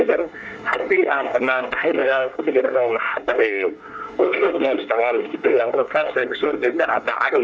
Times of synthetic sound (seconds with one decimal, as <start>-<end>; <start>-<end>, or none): 0.0-7.4